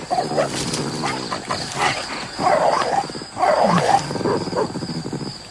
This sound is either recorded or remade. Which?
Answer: recorded